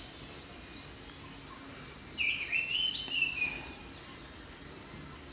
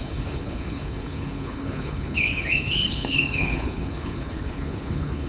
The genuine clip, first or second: first